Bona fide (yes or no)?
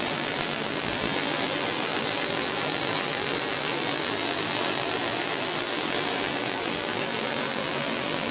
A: no